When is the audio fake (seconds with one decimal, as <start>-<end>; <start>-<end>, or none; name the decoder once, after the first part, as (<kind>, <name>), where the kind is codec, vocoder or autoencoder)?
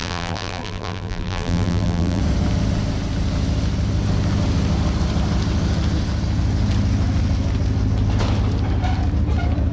0.0-2.2 (vocoder, BigVGAN v2)